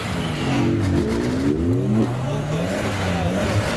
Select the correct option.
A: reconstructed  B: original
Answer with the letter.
B